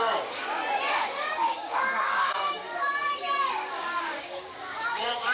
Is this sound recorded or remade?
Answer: remade